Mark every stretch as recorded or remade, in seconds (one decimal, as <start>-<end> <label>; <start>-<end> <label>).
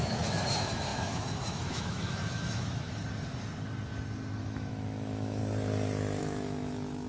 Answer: 0.0-3.0 remade; 3.0-4.4 recorded; 4.4-5.4 remade; 5.4-6.2 recorded; 6.2-7.1 remade